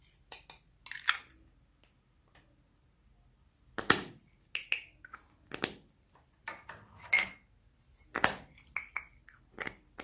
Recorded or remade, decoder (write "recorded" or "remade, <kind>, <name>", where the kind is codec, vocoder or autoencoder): recorded